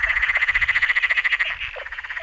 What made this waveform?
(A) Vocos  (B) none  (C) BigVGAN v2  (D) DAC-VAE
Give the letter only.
B